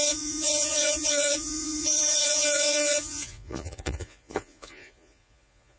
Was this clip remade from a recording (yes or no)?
yes